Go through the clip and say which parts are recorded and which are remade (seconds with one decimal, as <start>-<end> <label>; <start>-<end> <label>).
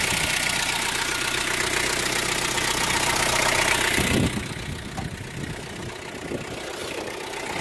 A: 0.0-7.6 recorded